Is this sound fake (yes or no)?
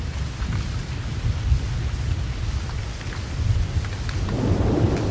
no